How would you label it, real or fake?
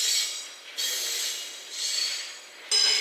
real